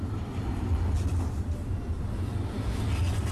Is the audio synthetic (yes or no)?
no